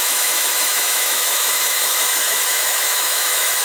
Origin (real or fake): fake